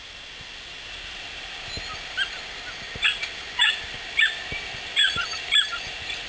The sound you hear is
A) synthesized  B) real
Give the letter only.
B